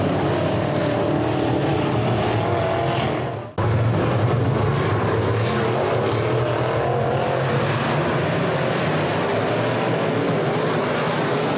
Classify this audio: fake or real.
real